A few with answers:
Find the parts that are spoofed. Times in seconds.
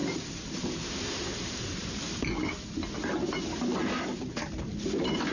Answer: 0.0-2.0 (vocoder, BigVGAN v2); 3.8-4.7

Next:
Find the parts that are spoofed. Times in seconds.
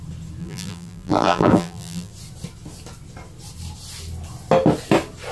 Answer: 0.4-2.1 (vocoder, BigVGAN v2)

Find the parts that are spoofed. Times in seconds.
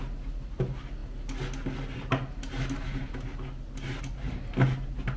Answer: none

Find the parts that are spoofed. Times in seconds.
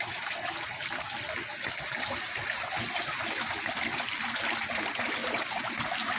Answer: 5.2-6.2 (vocoder, BigVGAN v2)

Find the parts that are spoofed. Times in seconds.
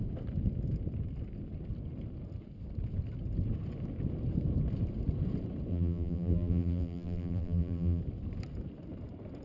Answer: 5.7-8.0 (vocoder, BigVGAN v2)